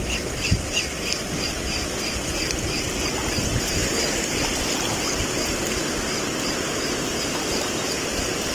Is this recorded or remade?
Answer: recorded